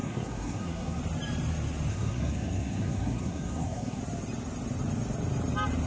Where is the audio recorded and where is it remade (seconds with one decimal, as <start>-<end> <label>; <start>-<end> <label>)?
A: 0.0-1.0 remade; 1.0-1.9 recorded; 1.9-4.0 remade; 4.0-5.9 recorded